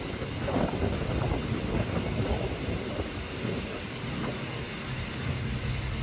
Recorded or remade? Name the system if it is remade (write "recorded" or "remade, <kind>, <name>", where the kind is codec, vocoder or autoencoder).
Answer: recorded